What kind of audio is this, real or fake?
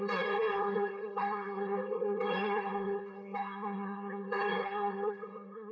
fake